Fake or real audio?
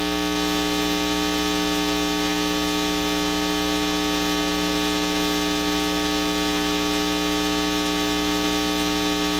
real